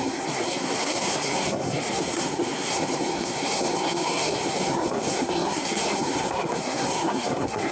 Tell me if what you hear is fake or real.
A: fake